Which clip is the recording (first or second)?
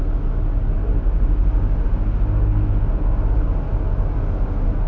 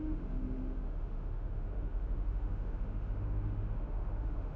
first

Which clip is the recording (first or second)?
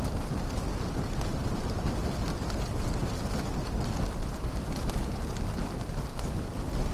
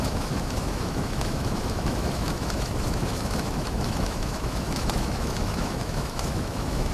first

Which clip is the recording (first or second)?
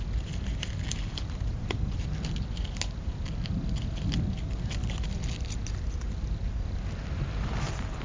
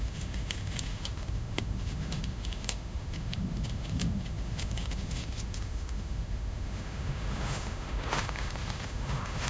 first